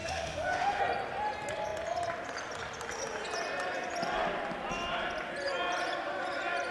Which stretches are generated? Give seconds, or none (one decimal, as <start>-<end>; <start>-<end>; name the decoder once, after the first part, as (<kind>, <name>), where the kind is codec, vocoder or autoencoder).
0.0-0.8 (autoencoder, DAC-VAE)